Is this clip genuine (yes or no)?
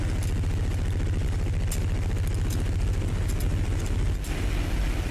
yes